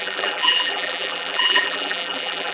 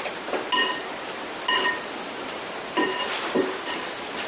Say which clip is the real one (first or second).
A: second